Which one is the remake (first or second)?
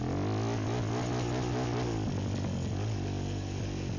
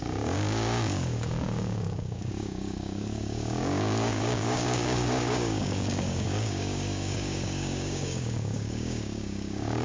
second